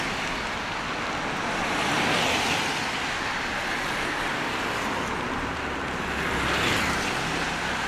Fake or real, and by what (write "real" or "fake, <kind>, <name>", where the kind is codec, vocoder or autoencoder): real